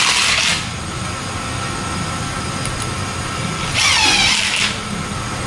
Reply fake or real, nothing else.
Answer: real